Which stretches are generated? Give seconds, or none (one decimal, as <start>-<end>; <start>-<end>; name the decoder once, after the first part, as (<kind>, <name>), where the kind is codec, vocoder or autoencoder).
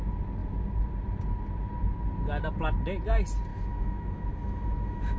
3.5-5.2 (autoencoder, DAC-VAE)